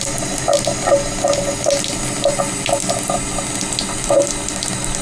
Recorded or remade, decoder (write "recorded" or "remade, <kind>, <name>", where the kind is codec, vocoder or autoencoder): recorded